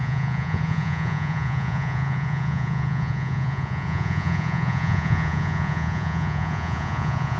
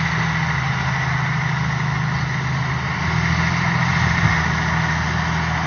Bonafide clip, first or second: second